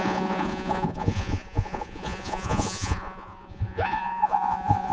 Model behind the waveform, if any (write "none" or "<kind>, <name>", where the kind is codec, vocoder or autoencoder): vocoder, Vocos